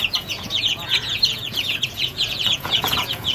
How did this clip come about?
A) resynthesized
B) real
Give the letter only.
A